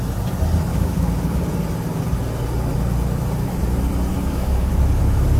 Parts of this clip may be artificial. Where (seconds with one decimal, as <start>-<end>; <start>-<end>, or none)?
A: 0.7-1.4; 4.1-4.7